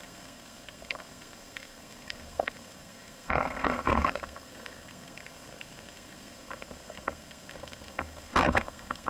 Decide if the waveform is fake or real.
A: fake